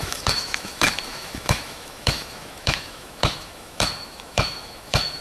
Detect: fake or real fake